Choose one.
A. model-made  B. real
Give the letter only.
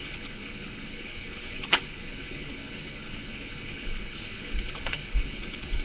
A